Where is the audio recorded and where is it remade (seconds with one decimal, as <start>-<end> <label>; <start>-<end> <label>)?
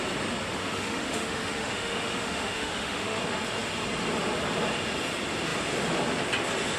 0.0-0.5 recorded; 0.5-3.2 remade; 3.2-6.8 recorded